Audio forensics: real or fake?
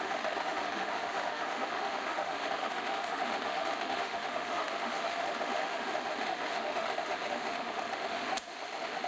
fake